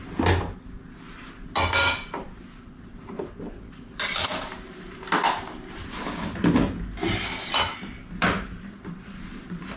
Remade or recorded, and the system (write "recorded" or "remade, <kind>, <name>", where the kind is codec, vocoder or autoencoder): recorded